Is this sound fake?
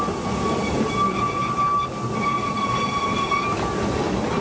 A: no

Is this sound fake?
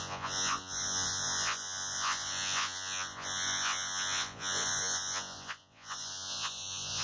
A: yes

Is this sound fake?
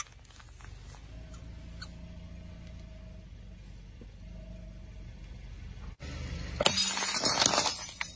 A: no